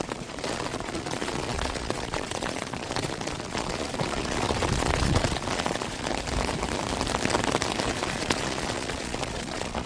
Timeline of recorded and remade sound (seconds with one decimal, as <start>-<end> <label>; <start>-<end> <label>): 0.0-6.1 remade; 6.1-7.9 recorded; 7.9-9.9 remade